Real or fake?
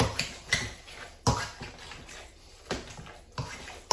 real